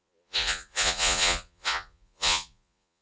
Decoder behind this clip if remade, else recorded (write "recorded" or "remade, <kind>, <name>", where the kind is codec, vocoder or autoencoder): remade, vocoder, Vocos